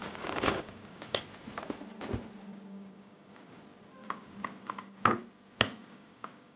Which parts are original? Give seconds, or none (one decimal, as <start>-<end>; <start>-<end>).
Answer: 1.2-2.5; 3.6-4.0; 5.0-5.8

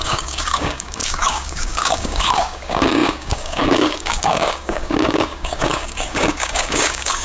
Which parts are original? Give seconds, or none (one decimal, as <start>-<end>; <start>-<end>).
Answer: none

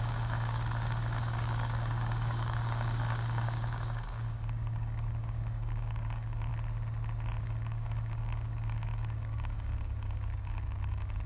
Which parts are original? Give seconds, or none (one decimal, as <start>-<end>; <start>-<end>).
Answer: 6.5-7.4